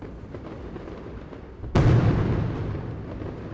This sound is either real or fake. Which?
real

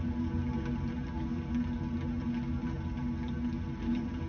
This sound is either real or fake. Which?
real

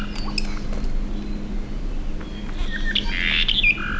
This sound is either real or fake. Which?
real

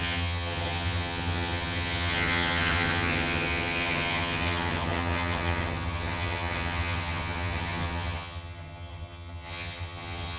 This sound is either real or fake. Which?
fake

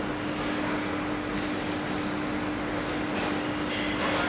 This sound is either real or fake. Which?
real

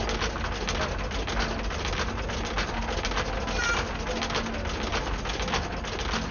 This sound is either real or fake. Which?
real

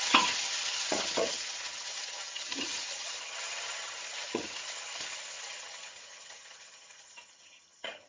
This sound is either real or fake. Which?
fake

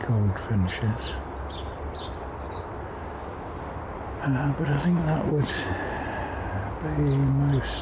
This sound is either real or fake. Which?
real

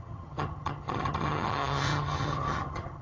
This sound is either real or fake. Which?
fake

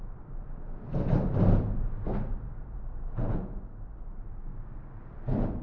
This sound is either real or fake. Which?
real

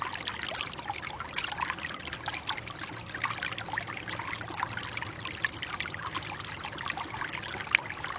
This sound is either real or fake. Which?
real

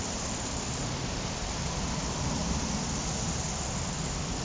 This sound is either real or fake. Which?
real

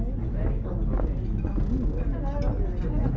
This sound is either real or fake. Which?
real